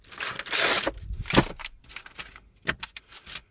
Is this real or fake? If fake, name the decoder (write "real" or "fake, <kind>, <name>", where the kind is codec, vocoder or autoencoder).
real